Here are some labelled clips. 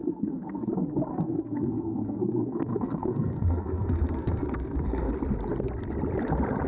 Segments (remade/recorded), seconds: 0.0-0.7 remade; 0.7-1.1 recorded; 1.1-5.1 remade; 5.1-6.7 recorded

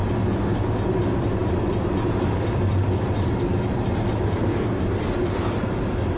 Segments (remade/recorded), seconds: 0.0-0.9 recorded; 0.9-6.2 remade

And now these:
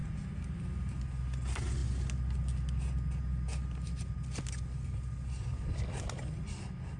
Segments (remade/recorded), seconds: 0.0-7.0 recorded

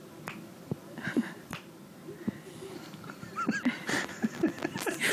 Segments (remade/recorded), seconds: 0.0-5.1 recorded

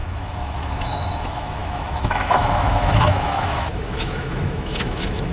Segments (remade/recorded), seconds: 0.0-5.3 remade

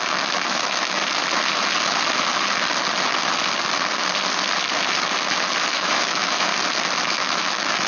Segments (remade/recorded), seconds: 0.0-1.0 remade; 1.0-5.7 recorded; 5.7-6.5 remade; 6.5-7.1 recorded; 7.1-7.9 remade

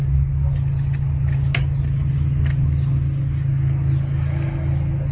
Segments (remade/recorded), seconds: 0.0-5.1 recorded